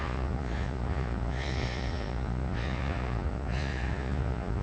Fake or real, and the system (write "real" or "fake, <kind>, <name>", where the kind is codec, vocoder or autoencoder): fake, vocoder, Vocos